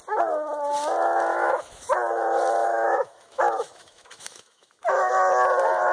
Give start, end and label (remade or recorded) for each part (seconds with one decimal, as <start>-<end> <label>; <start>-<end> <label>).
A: 0.0-1.3 recorded; 1.3-1.9 remade; 1.9-2.6 recorded; 2.6-5.1 remade; 5.1-5.9 recorded

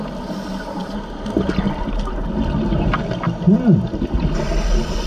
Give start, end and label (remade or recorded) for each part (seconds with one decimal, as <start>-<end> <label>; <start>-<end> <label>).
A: 0.0-5.1 recorded

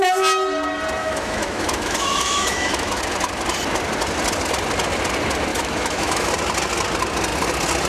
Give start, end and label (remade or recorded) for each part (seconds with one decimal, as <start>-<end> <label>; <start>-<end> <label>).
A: 0.0-1.0 recorded; 1.0-3.0 remade; 3.0-5.5 recorded; 5.5-6.3 remade; 6.3-7.9 recorded

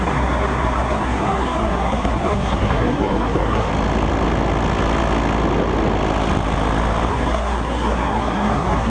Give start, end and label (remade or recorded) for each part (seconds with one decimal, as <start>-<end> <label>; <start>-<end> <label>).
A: 0.0-3.7 remade; 3.7-7.1 recorded; 7.1-8.9 remade

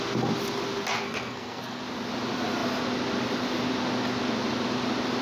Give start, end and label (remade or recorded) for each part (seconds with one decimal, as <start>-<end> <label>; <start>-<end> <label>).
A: 0.0-0.9 recorded; 0.9-1.8 remade; 1.8-5.2 recorded

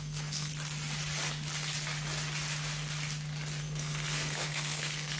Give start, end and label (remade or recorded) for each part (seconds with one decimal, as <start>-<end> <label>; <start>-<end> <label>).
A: 0.0-0.5 remade; 0.5-3.6 recorded; 3.6-5.2 remade